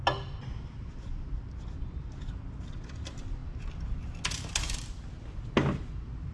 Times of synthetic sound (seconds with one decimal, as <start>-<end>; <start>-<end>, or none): none